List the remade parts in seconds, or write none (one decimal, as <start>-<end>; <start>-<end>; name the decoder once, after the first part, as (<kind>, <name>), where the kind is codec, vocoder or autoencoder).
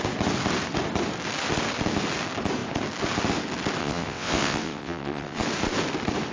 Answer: 3.8-5.4 (vocoder, WaveNeXt)